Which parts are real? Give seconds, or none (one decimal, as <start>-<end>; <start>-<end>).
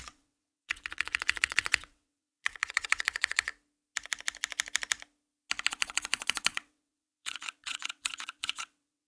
3.5-5.7